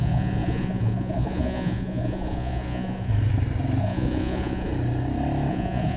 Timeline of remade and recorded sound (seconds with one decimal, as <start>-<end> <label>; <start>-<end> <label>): 0.0-3.1 remade; 3.1-3.8 recorded; 3.8-4.7 remade; 4.7-5.5 recorded; 5.5-6.0 remade